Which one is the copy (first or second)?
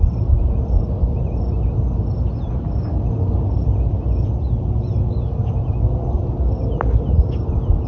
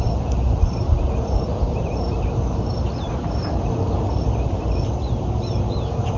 second